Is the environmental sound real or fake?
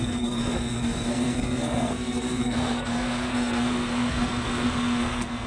fake